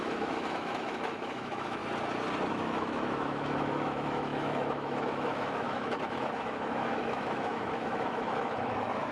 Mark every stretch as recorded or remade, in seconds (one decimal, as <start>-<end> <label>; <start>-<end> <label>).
0.0-1.8 remade; 1.8-2.5 recorded; 2.5-9.1 remade